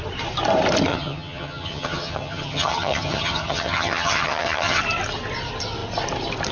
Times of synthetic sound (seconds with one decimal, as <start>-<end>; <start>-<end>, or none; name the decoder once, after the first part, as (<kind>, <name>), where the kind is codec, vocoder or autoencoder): 0.9-4.8 (vocoder, HiFi-GAN)